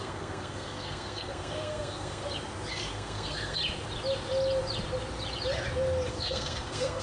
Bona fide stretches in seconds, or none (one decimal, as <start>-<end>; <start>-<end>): 2.2-2.7; 3.6-6.1